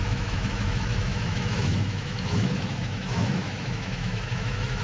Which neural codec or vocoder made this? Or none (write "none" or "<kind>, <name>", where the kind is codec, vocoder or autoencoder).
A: autoencoder, DAC-VAE